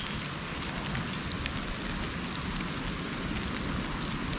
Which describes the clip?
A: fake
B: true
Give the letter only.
B